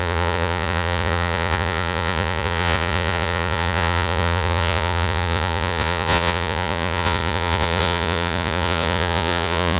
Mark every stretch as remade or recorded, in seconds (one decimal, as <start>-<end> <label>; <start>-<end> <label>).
0.0-9.8 remade